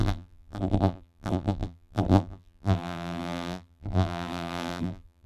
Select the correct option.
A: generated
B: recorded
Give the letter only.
A